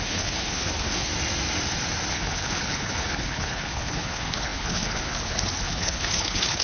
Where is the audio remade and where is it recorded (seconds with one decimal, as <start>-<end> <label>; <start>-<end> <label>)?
0.0-1.1 remade; 1.1-2.1 recorded; 2.1-6.6 remade

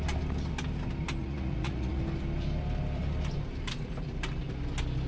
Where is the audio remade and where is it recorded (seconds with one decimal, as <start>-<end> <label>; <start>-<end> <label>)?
0.0-1.2 recorded; 1.2-2.0 remade; 2.0-5.1 recorded

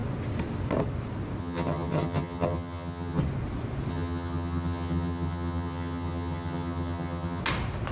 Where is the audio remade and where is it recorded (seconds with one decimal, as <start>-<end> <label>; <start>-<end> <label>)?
0.0-1.4 recorded; 1.4-3.2 remade; 3.2-3.9 recorded; 3.9-7.4 remade; 7.4-7.9 recorded

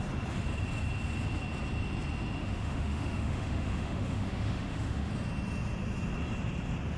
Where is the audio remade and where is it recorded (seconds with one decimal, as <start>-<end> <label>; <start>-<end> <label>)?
0.0-2.4 recorded; 2.4-5.1 remade; 5.1-7.0 recorded